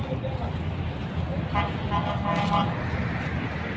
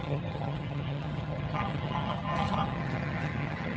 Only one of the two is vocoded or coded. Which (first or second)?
second